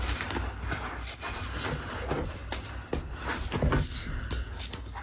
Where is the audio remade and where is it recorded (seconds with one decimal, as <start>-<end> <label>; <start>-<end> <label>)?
0.0-5.0 recorded